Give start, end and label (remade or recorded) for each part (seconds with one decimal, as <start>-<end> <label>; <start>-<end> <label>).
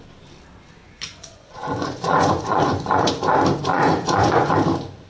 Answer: 0.0-0.8 recorded; 0.8-3.1 remade; 3.1-3.7 recorded; 3.7-4.5 remade; 4.5-5.1 recorded